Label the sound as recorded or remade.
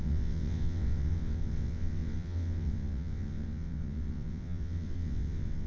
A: remade